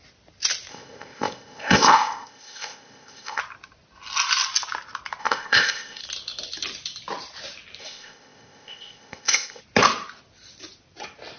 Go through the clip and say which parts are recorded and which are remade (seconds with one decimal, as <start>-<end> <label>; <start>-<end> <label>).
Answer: 0.0-0.7 recorded; 0.7-3.4 remade; 3.4-5.2 recorded; 5.2-6.0 remade; 6.0-7.8 recorded; 7.8-9.6 remade; 9.6-11.4 recorded